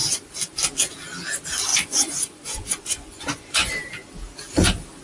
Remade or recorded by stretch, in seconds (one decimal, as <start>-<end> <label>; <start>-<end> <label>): 0.0-1.7 recorded; 1.7-3.7 remade; 3.7-5.0 recorded